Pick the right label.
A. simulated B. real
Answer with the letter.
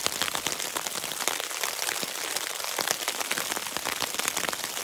B